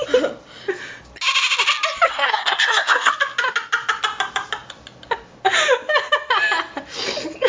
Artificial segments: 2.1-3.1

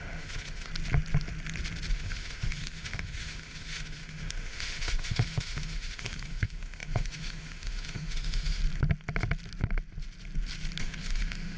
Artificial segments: 0.0-0.7; 1.9-8.6; 10.8-11.6

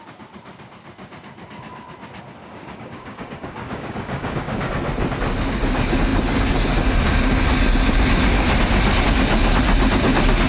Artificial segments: 2.4-4.7

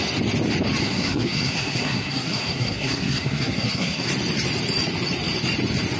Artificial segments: 0.8-4.1

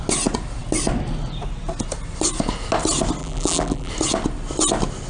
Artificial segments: 3.2-3.9

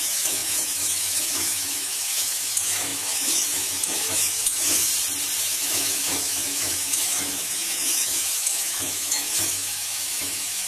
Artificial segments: 0.0-4.9; 5.4-10.7

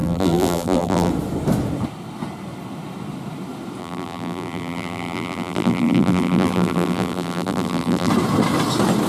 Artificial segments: 0.0-1.1; 3.8-8.1